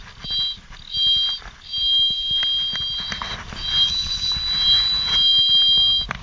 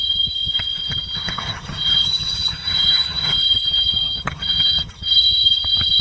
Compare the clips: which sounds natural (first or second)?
first